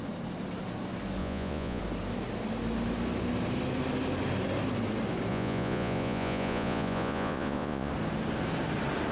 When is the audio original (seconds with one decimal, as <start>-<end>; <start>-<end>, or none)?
0.0-1.2; 1.8-5.3; 7.9-9.1